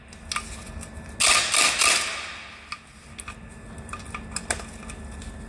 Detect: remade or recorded recorded